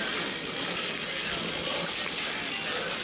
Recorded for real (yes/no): yes